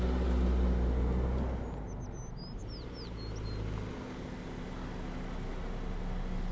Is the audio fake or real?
real